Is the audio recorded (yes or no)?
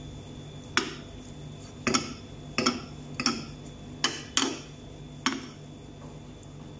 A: yes